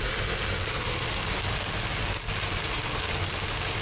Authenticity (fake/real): real